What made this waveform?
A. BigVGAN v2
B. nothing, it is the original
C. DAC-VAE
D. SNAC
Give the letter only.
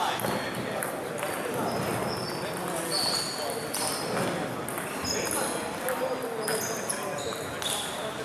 B